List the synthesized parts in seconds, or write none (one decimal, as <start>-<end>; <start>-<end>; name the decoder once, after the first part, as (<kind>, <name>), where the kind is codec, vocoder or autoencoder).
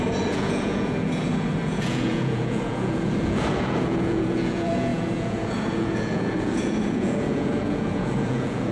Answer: 0.0-8.7 (vocoder, Vocos)